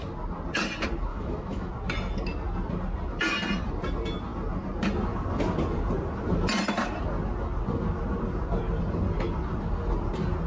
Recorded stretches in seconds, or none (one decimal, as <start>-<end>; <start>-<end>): 0.0-1.1; 1.7-10.5